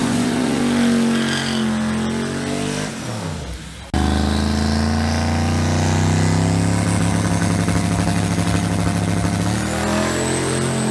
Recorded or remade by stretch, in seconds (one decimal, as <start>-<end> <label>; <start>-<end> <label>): 0.0-0.6 remade; 0.6-10.9 recorded